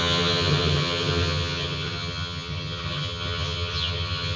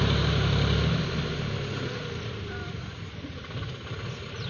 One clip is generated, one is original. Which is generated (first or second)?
first